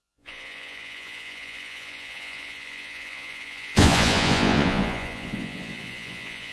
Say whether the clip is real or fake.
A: fake